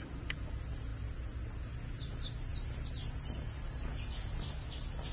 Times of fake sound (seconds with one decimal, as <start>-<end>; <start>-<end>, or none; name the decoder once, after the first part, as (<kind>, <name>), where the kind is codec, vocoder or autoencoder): none